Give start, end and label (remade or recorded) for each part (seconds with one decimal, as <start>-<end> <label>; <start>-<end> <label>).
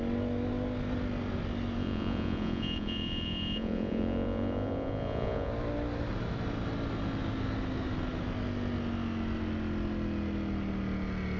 0.0-1.8 recorded; 1.8-5.5 remade; 5.5-11.4 recorded